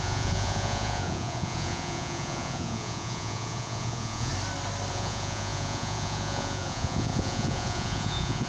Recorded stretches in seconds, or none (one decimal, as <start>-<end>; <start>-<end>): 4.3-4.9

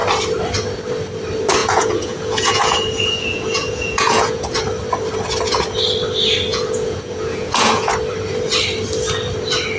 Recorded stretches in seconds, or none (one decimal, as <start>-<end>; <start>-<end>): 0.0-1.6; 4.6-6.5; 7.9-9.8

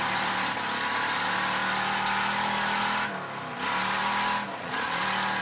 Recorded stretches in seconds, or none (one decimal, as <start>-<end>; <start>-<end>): 0.0-4.5; 5.0-5.4